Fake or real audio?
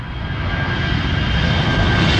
real